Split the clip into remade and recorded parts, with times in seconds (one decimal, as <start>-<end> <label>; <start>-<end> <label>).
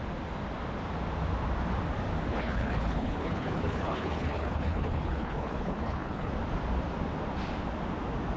0.0-2.3 recorded; 2.3-6.3 remade; 6.3-8.4 recorded